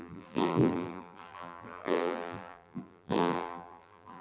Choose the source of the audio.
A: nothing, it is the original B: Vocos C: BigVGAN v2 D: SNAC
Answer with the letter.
C